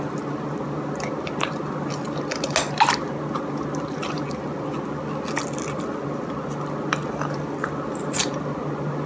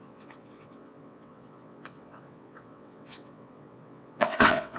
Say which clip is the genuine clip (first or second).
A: first